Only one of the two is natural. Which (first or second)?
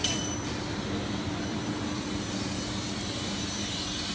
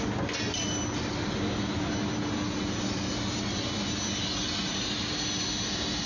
second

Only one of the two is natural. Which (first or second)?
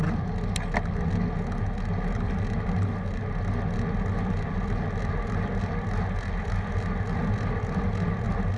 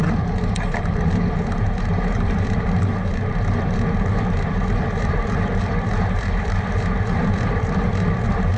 first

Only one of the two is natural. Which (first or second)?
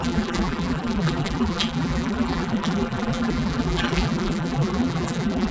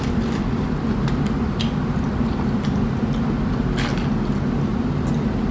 second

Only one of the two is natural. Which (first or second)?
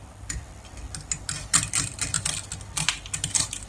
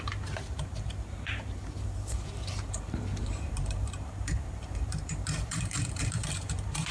first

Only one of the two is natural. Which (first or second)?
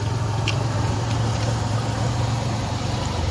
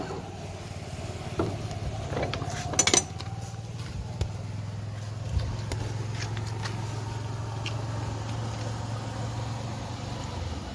second